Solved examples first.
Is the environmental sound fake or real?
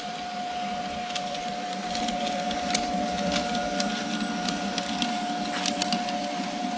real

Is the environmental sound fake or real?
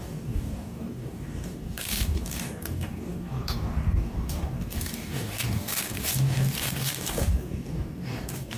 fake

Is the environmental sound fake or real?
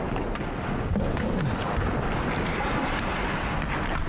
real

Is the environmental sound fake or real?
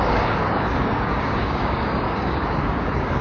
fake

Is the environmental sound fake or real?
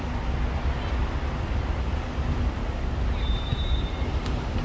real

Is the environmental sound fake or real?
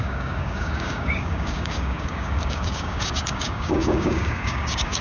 fake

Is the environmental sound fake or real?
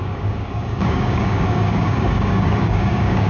fake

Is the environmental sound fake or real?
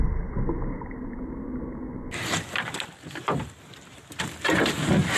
real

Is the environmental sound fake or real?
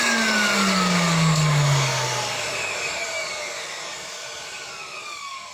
fake